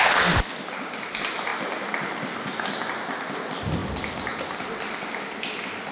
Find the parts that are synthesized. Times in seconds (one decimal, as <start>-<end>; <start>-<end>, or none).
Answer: none